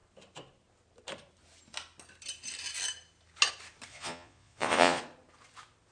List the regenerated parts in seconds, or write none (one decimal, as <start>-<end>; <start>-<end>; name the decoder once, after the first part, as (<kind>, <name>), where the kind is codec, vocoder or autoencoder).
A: 3.9-5.0 (vocoder, Vocos)